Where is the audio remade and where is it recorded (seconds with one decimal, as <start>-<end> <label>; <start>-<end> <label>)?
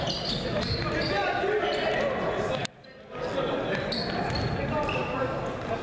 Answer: 0.0-5.8 recorded